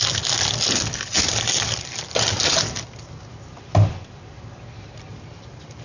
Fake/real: real